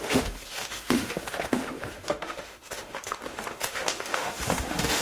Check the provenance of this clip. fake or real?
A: fake